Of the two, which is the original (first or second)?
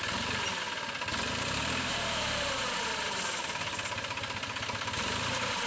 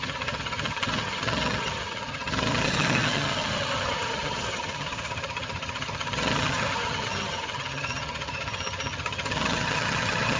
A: first